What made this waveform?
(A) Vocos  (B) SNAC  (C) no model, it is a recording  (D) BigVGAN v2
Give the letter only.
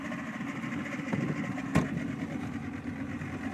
C